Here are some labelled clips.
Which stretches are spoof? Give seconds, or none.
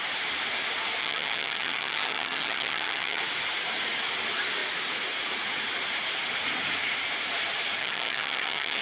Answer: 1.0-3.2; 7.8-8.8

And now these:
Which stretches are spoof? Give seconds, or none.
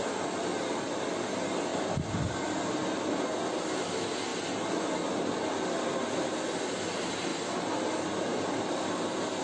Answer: 1.7-3.3; 4.3-4.9; 7.3-9.4